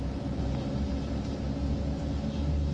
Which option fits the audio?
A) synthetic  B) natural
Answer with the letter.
B